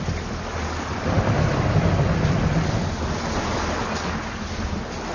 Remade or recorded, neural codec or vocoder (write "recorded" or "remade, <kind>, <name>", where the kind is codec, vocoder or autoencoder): recorded